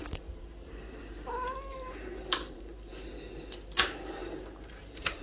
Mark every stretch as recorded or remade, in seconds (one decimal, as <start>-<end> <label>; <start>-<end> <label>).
0.0-1.0 remade; 1.0-1.7 recorded; 1.7-2.9 remade; 2.9-4.2 recorded; 4.2-5.2 remade